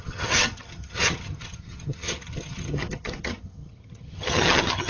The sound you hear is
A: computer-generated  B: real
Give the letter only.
A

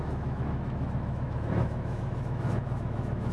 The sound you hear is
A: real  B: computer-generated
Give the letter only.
B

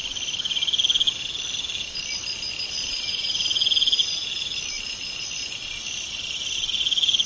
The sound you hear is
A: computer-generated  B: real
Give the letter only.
B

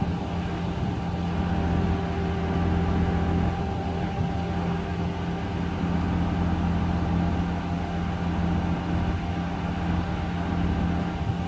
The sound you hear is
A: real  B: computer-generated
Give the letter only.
A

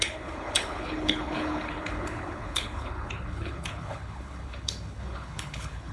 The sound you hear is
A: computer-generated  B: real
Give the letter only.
A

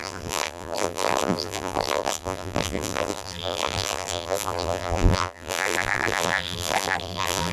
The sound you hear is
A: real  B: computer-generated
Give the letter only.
B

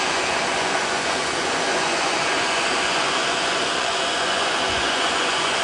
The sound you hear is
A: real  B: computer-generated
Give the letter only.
B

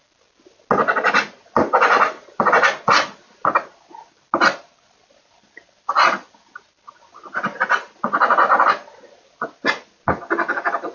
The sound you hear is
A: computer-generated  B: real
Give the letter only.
B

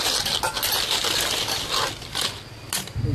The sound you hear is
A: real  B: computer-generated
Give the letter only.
A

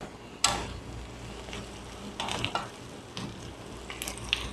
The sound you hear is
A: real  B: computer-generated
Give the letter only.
A